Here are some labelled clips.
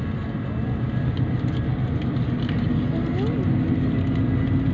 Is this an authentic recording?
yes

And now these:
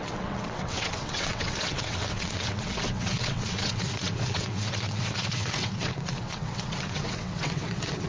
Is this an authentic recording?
no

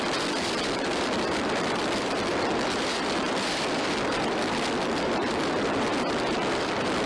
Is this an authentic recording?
no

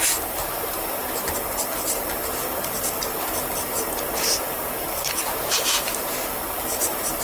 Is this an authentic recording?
yes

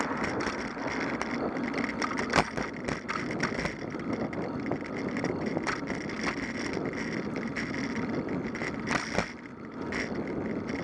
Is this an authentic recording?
yes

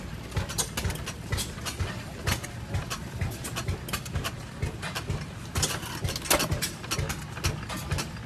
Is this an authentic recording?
yes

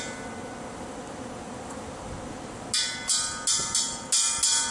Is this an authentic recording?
yes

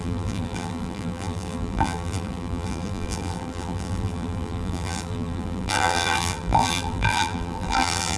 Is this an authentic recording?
no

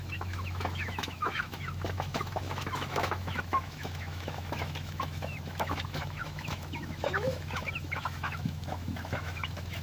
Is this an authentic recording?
no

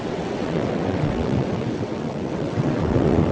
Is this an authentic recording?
no